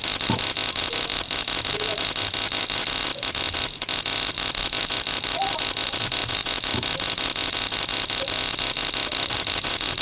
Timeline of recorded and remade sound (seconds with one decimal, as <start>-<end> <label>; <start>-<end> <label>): 0.0-10.0 recorded